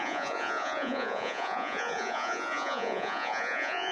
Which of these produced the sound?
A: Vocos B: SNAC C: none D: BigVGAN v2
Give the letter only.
A